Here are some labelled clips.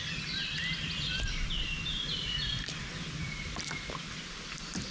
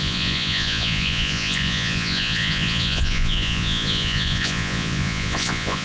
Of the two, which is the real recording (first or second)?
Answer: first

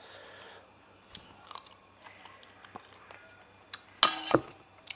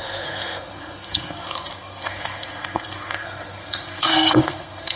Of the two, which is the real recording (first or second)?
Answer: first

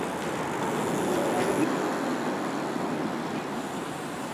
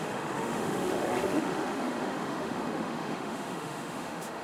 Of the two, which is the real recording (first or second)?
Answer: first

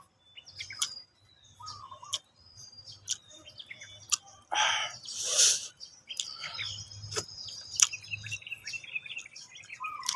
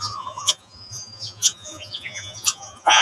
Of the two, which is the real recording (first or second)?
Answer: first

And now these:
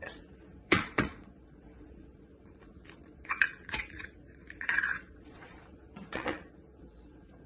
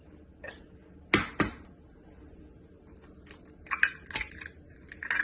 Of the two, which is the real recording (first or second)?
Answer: second